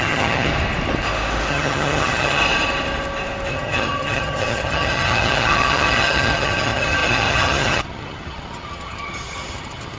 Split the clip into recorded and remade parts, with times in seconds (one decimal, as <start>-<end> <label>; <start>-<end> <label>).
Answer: 0.0-0.5 remade; 0.5-1.5 recorded; 1.5-2.4 remade; 2.4-3.5 recorded; 3.5-10.0 remade